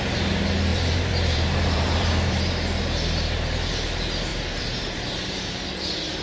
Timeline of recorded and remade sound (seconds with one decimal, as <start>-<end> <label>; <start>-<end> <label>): 0.0-0.7 recorded; 0.7-2.5 remade; 2.5-4.3 recorded; 4.3-5.5 remade; 5.5-6.2 recorded